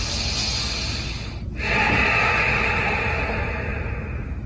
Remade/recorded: recorded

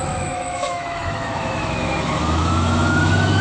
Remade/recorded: remade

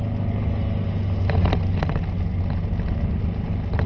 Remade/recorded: recorded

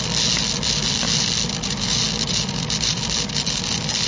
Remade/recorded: recorded